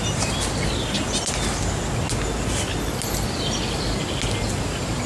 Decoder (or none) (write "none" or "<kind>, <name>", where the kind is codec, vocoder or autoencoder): none